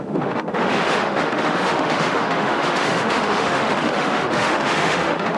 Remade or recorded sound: remade